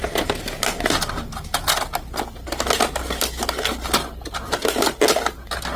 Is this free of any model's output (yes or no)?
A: yes